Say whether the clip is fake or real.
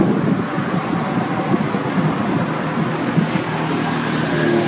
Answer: real